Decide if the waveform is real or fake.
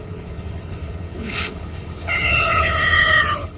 fake